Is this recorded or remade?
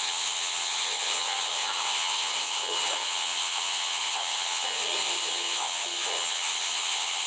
remade